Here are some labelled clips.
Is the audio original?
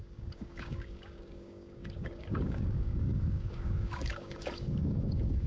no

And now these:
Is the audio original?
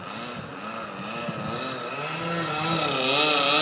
yes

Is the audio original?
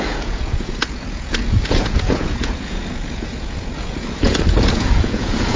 no